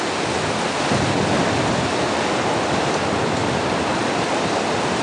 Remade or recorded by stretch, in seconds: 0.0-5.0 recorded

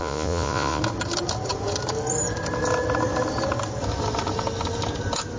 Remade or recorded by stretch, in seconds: 0.0-0.8 remade; 0.8-5.4 recorded

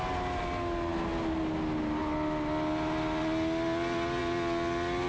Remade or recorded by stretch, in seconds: 0.0-5.1 recorded

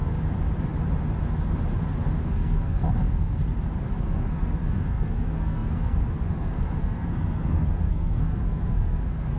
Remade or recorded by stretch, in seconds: 0.0-2.2 recorded; 2.2-3.4 remade; 3.4-4.0 recorded; 4.0-9.4 remade

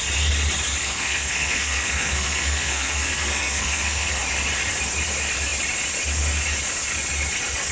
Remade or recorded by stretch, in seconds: 0.0-0.8 recorded; 0.8-4.2 remade; 4.2-7.7 recorded